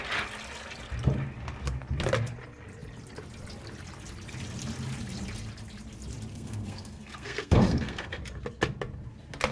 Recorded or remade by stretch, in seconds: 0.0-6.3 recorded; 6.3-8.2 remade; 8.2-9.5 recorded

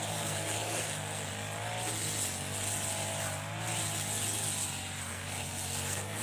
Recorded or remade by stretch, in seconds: 0.0-1.3 remade; 1.3-5.0 recorded; 5.0-6.2 remade

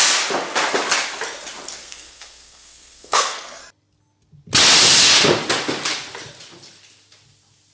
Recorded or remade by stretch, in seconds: 0.0-1.8 recorded; 1.8-3.6 remade; 3.6-7.7 recorded